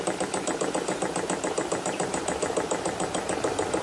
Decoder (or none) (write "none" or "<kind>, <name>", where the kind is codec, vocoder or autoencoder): vocoder, BigVGAN v2